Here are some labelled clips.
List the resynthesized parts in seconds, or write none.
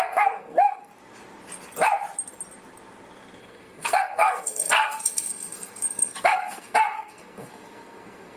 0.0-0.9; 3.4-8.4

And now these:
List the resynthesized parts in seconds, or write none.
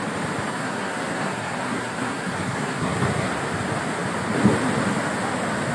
0.5-3.4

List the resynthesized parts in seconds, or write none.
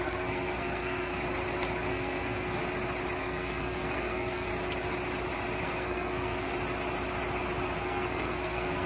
0.0-1.1; 1.9-2.6; 3.2-4.5; 5.6-6.5; 7.8-8.9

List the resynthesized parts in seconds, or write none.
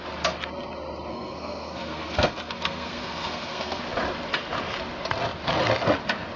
1.1-3.8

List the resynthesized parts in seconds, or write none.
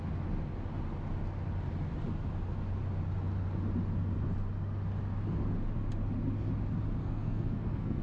7.0-8.0